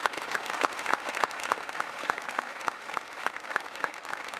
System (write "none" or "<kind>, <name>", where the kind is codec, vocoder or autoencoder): autoencoder, DAC-VAE